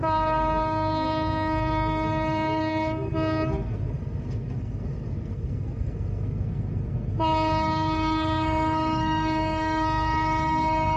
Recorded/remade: remade